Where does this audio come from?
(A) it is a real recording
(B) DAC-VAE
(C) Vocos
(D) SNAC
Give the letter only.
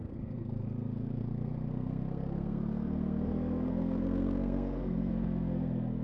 D